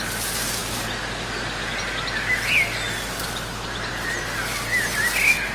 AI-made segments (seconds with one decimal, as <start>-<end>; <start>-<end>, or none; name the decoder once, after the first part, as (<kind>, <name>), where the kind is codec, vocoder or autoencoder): none